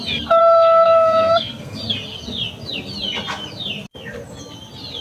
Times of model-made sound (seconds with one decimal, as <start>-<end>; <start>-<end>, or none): 0.4-1.8